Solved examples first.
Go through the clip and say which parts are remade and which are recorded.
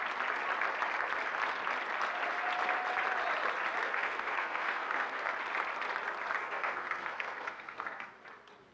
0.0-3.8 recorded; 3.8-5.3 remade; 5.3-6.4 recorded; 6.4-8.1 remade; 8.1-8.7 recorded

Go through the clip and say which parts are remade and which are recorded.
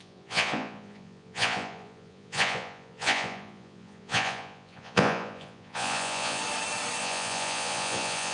0.0-6.4 remade; 6.4-7.0 recorded; 7.0-8.3 remade